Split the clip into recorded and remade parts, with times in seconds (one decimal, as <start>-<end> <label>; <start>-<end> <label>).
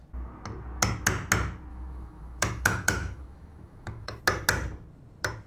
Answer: 0.0-1.7 recorded; 1.7-4.2 remade; 4.2-5.5 recorded